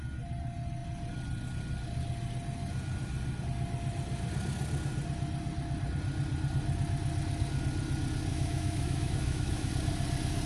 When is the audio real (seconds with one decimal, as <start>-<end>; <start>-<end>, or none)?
0.0-8.3; 9.7-10.5